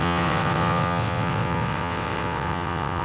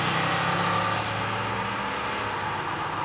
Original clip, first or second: second